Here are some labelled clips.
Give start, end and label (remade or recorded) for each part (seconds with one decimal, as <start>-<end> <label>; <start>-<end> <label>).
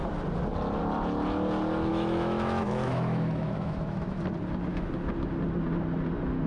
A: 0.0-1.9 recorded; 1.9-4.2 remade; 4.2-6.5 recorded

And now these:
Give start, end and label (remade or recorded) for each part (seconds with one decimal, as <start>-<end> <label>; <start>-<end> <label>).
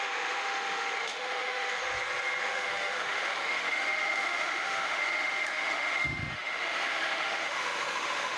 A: 0.0-1.8 remade; 1.8-2.4 recorded; 2.4-8.4 remade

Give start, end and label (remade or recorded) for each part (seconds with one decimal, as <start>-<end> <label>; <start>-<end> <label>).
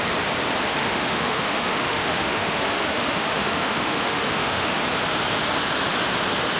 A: 0.0-0.8 recorded; 0.8-4.8 remade; 4.8-6.6 recorded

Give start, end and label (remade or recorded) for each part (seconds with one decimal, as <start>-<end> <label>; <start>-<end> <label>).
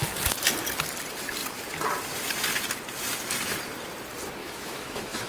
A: 0.0-4.4 recorded; 4.4-5.3 remade